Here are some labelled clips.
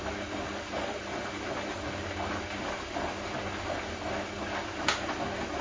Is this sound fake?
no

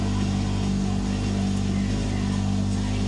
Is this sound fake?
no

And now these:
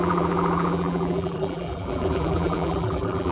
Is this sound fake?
yes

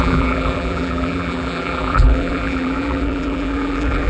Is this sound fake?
yes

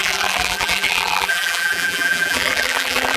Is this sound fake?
yes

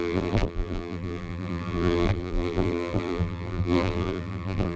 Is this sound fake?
yes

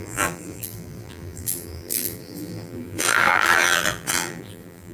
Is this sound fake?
yes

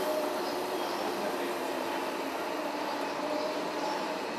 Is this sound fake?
yes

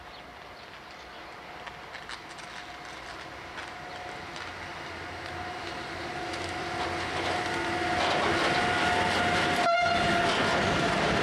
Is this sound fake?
no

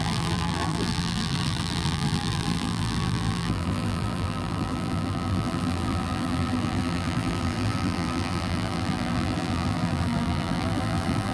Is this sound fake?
yes